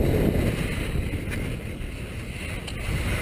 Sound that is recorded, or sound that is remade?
recorded